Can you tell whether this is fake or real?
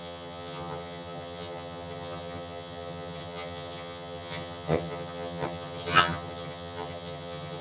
fake